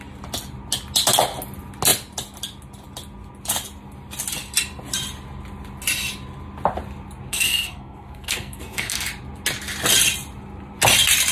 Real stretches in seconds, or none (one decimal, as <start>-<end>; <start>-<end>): 0.0-7.3; 9.1-11.3